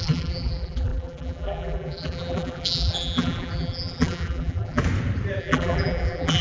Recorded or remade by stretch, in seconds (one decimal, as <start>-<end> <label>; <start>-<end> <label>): 0.0-4.8 remade; 4.8-5.4 recorded; 5.4-6.4 remade